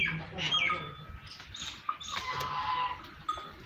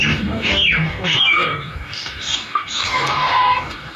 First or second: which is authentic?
first